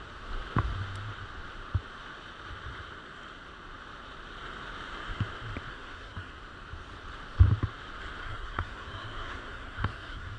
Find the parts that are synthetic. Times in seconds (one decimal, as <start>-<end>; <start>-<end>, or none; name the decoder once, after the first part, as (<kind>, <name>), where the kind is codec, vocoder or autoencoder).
5.7-6.3 (codec, SNAC); 8.2-10.4